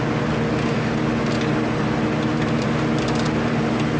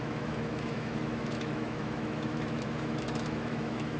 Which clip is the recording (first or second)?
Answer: first